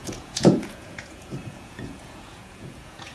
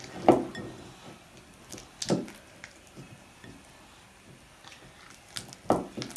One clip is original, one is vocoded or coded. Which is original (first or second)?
second